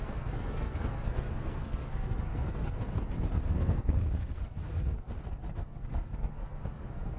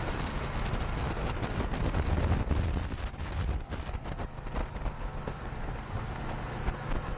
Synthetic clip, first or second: first